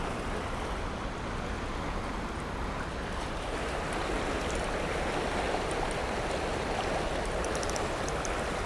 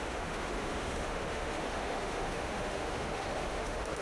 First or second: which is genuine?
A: first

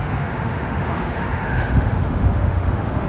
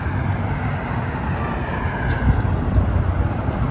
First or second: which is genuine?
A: second